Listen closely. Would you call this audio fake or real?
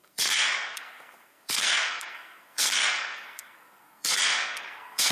fake